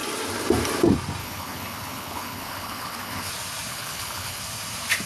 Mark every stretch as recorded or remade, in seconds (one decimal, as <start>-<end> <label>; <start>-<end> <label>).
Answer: 0.0-1.2 recorded; 1.2-3.3 remade; 3.3-3.7 recorded; 3.7-4.4 remade; 4.4-5.1 recorded